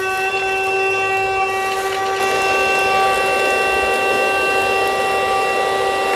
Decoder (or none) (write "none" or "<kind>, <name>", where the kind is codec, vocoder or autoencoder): none